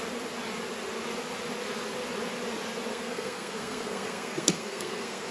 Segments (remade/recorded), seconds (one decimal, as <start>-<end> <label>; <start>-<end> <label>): 0.0-2.9 recorded; 2.9-5.3 remade